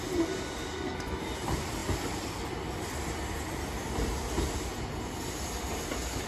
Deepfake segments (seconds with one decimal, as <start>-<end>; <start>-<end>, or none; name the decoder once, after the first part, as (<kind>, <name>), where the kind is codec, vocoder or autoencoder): 0.7-1.2 (codec, SNAC)